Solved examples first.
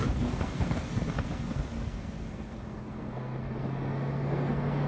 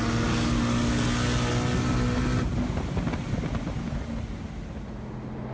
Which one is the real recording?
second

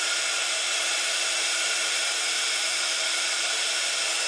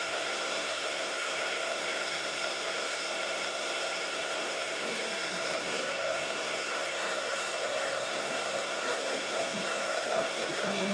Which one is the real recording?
first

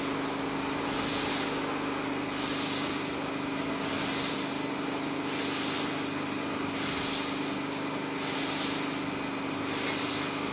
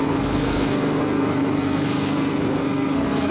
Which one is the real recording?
first